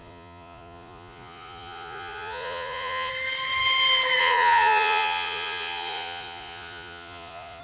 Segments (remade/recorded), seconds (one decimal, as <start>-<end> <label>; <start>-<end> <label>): 0.0-3.1 remade; 3.1-4.2 recorded; 4.2-7.6 remade